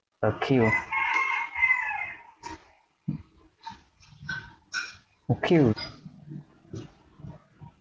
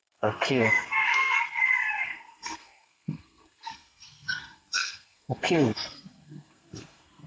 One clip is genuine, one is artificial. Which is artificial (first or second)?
second